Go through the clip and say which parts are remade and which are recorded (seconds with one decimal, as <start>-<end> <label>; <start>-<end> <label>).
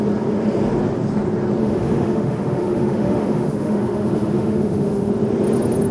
0.0-1.6 recorded; 1.6-5.1 remade; 5.1-5.9 recorded